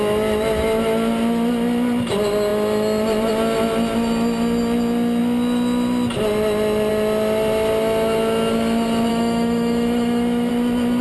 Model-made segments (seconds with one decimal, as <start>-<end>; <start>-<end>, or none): 9.1-10.5

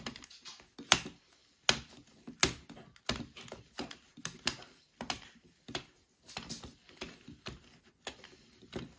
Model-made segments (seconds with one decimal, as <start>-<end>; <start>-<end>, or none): none

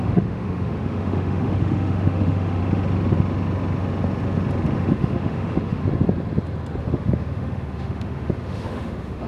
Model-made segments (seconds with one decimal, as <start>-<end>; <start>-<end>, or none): 0.0-2.6; 4.9-5.8; 6.8-9.3

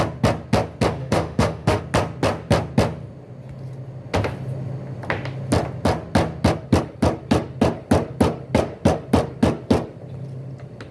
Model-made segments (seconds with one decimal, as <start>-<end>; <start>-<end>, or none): 1.0-1.8

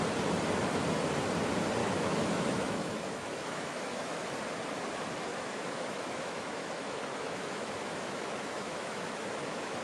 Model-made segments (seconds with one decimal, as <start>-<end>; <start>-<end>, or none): 1.8-4.3; 5.3-9.8

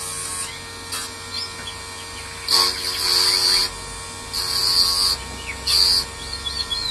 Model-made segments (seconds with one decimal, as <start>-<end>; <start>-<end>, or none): none

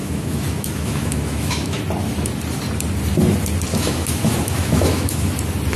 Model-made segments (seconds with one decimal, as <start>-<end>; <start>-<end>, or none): 0.0-1.8; 3.7-5.3

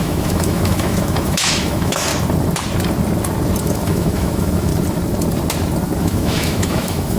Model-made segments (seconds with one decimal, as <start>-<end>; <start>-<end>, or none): 0.0-2.1; 3.6-4.7; 6.0-7.2